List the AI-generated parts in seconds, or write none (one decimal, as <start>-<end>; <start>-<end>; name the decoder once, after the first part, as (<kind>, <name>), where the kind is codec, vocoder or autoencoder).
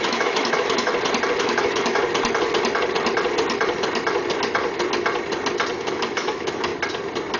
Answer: 0.0-0.9 (autoencoder, DAC-VAE); 1.4-2.0; 5.8-6.7